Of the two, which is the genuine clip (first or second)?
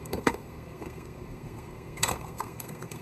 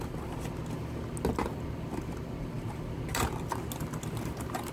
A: second